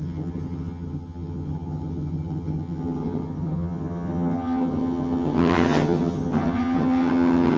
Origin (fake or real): fake